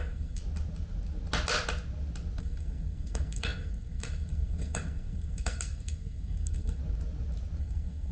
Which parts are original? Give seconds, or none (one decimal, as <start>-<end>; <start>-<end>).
0.4-2.4; 6.8-7.6